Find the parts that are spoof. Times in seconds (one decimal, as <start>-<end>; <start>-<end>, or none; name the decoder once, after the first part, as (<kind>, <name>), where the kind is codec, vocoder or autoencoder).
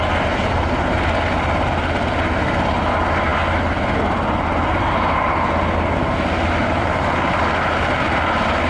none